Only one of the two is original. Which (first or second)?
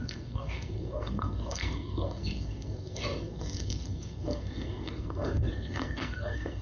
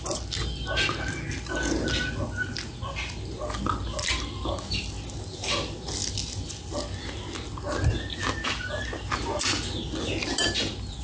second